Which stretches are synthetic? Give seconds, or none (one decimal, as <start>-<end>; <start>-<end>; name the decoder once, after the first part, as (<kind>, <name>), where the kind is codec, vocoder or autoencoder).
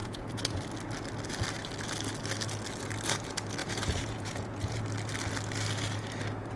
0.0-0.6 (vocoder, Vocos); 3.6-4.8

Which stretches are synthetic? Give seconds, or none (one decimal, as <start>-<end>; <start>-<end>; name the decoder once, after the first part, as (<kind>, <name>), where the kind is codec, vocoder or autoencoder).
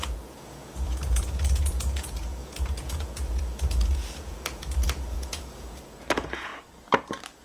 0.0-6.5 (vocoder, Vocos)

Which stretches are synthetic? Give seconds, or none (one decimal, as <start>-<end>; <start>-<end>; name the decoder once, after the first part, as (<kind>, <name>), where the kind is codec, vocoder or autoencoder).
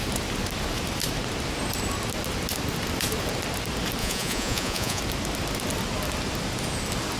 4.0-5.0 (vocoder, Vocos)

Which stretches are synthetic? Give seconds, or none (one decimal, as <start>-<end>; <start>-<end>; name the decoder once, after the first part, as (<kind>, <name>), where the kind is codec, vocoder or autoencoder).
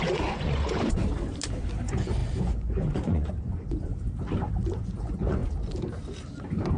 0.0-1.0 (vocoder, Vocos); 1.8-3.9; 4.7-5.4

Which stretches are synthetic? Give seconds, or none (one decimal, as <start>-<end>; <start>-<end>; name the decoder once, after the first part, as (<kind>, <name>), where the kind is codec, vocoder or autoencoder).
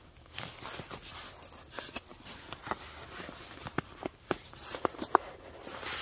none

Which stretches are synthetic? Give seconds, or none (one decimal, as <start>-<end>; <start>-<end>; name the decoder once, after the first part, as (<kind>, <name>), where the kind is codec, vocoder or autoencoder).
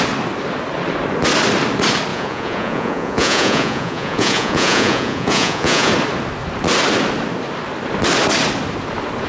2.1-5.9 (vocoder, Vocos)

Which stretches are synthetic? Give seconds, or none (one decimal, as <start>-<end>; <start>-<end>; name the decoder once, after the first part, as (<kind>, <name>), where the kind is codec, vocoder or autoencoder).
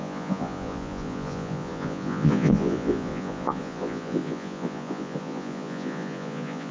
0.0-6.7 (vocoder, Vocos)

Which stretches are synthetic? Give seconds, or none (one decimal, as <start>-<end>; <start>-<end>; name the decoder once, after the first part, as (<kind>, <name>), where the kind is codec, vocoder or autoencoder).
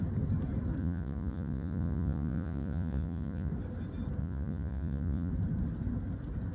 0.8-3.5 (vocoder, Vocos); 4.2-5.3